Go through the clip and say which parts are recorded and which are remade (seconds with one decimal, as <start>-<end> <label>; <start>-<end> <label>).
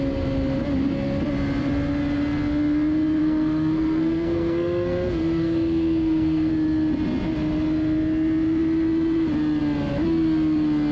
0.0-3.2 recorded; 3.2-6.5 remade; 6.5-10.9 recorded